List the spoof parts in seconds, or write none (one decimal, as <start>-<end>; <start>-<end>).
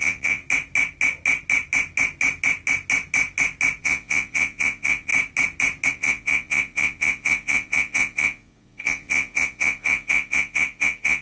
0.0-0.4; 3.8-5.1; 5.9-11.2